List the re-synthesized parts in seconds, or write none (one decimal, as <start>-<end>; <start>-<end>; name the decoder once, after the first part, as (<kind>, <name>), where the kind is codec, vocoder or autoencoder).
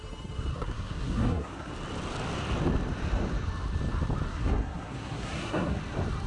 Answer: 0.5-1.7 (codec, SNAC); 4.3-5.8